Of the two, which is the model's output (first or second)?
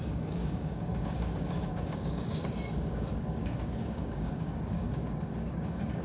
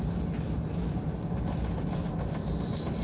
first